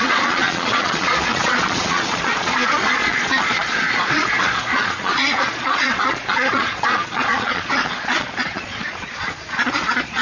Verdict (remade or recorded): remade